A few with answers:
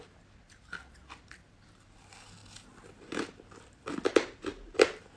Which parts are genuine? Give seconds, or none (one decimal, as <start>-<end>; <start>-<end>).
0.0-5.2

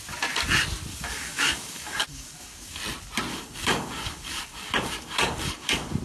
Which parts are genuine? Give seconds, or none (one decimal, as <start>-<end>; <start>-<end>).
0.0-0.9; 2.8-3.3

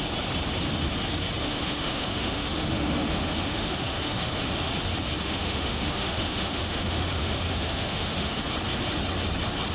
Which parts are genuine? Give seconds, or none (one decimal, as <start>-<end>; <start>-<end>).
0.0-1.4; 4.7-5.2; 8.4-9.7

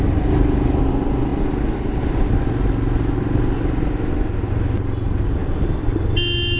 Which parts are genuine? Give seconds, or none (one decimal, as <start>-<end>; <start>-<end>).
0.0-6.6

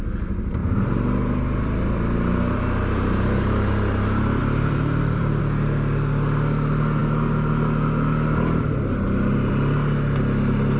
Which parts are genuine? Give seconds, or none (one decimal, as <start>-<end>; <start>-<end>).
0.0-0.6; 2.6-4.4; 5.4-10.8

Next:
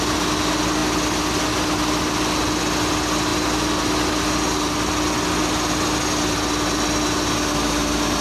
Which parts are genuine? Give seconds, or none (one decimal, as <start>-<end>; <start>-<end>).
0.0-8.2

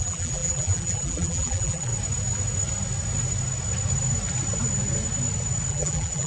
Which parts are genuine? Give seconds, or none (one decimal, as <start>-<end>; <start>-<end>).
1.9-5.7

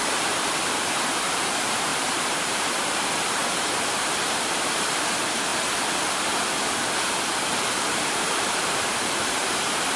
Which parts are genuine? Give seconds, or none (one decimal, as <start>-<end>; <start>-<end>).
3.4-4.0; 5.5-8.0